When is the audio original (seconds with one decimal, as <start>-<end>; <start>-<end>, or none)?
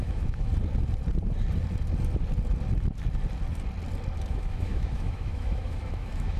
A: 0.5-4.3